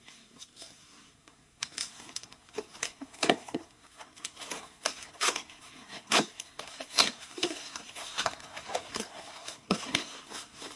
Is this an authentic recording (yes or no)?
no